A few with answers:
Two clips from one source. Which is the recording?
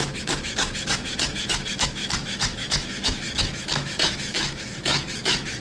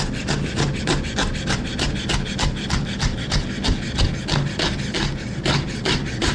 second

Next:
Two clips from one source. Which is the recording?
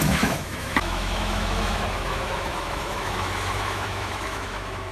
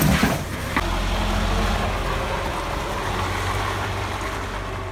second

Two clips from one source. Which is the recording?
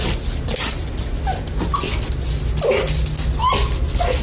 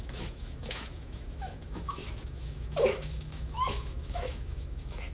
first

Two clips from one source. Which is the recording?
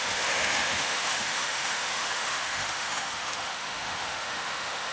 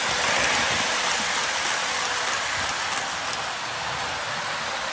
second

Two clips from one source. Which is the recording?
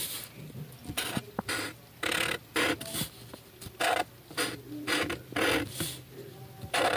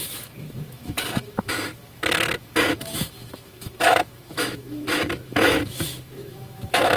first